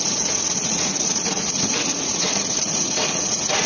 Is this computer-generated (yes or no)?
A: yes